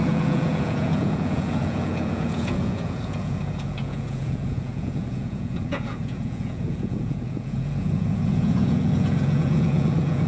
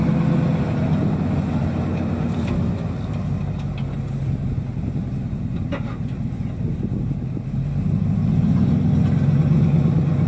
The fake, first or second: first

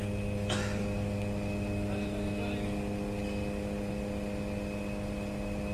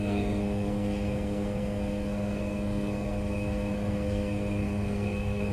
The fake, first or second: second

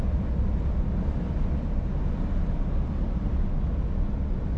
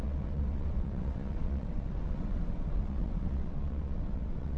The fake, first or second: second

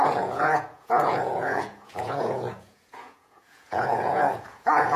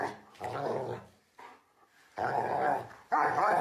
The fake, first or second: first